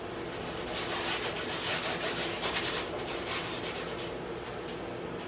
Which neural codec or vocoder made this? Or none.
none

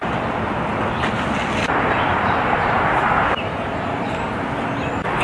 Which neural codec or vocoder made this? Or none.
none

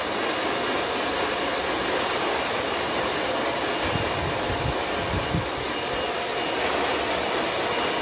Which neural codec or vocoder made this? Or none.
none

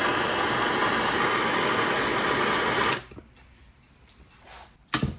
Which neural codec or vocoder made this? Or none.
vocoder, BigVGAN v2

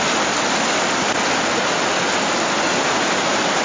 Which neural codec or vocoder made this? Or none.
none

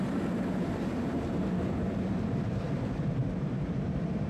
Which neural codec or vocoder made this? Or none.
vocoder, BigVGAN v2